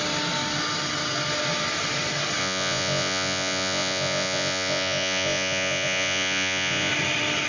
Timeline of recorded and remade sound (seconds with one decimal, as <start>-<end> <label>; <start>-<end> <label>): 0.0-2.4 recorded; 2.4-6.9 remade; 6.9-7.5 recorded